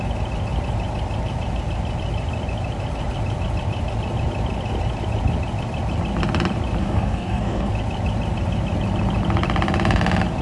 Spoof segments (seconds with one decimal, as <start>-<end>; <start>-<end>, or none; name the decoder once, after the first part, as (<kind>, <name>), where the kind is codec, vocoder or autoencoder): 6.8-7.7 (codec, DAC)